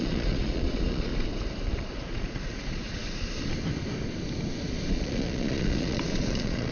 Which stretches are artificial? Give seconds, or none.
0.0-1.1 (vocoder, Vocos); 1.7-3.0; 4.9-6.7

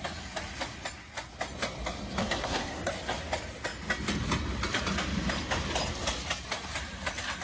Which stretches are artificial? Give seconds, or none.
2.2-2.9 (codec, SNAC)

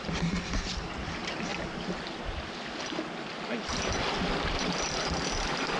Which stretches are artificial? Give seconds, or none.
none

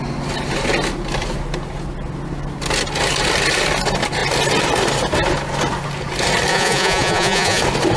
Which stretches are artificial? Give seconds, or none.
6.5-7.6 (vocoder, Vocos)

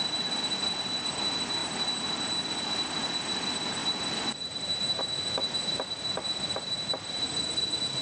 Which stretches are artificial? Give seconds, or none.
none

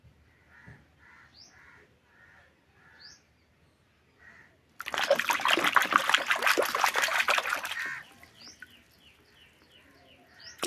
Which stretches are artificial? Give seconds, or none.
none

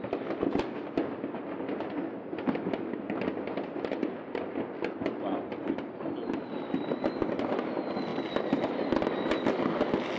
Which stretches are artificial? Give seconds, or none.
none